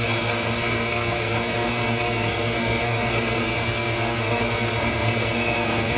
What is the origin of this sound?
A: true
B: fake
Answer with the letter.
B